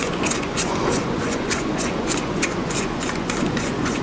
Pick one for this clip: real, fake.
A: fake